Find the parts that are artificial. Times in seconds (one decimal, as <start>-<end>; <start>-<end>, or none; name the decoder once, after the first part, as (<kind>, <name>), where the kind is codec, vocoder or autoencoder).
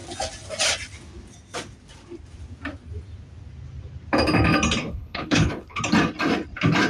4.8-5.8 (codec, HILCodec)